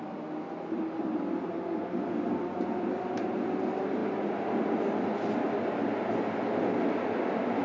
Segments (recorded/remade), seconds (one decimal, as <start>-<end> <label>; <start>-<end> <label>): 0.0-7.6 recorded